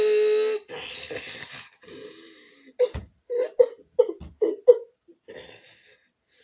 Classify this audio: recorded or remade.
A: recorded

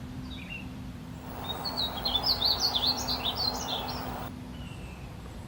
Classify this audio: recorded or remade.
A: remade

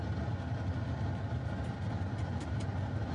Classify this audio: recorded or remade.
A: recorded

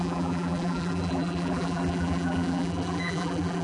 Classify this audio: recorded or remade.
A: remade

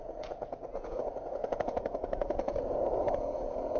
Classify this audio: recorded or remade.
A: remade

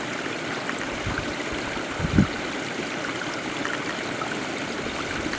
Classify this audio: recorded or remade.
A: recorded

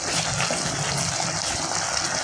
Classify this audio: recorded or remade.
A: recorded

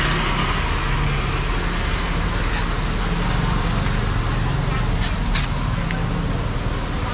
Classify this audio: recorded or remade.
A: recorded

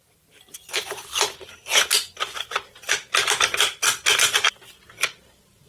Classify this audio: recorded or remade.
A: remade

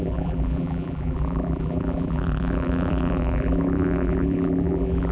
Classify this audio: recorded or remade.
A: remade